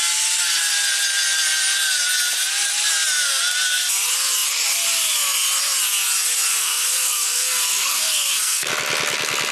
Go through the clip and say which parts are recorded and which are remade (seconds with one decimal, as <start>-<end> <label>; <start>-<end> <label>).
0.0-6.5 recorded; 6.5-8.7 remade; 8.7-9.5 recorded